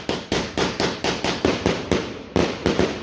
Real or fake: fake